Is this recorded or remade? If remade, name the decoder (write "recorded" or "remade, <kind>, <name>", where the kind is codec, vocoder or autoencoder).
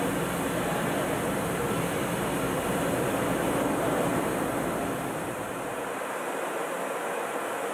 recorded